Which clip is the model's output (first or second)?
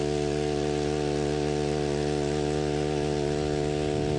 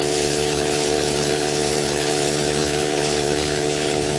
second